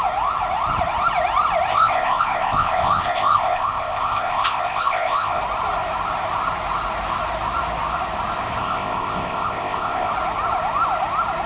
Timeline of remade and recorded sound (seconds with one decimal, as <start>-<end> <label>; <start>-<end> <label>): 0.0-1.7 recorded; 1.7-5.4 remade; 5.4-8.6 recorded; 8.6-10.1 remade; 10.1-11.5 recorded